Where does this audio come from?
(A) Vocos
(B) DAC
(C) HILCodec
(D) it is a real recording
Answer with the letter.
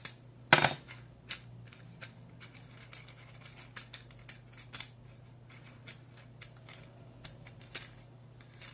D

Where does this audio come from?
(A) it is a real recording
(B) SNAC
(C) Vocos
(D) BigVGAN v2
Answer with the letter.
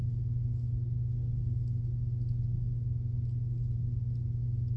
A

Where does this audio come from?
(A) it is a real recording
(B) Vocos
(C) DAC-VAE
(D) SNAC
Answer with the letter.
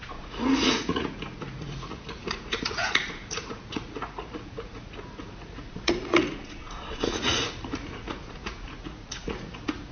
B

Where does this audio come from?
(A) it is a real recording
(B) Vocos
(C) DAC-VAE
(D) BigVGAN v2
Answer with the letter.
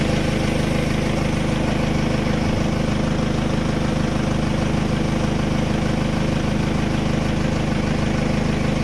A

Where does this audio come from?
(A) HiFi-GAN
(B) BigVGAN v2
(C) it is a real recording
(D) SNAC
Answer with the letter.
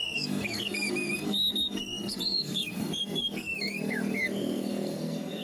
D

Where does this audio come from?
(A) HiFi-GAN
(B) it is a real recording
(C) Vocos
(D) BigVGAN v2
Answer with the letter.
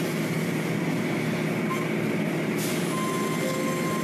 B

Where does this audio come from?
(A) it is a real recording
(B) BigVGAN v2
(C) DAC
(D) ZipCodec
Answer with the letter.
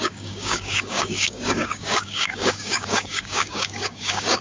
C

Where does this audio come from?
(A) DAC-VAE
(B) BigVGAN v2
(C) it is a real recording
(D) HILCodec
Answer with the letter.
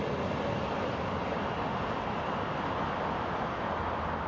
C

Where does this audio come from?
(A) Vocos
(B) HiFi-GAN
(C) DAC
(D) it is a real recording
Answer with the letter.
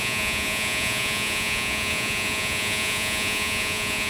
A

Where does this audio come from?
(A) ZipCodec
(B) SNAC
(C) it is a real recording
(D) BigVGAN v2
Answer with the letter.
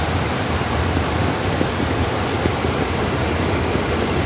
C